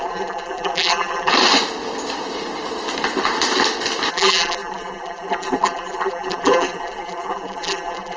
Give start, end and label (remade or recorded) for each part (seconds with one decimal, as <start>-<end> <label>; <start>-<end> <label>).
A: 0.0-1.3 remade; 1.3-4.1 recorded; 4.1-8.2 remade